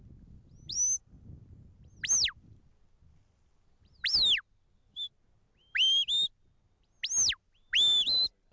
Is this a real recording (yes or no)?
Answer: yes